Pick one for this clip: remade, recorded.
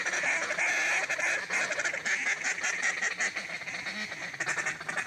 recorded